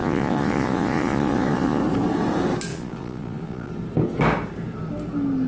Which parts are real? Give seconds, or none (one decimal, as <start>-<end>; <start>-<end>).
1.8-2.7; 3.7-5.5